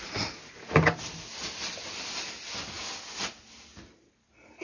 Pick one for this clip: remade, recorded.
recorded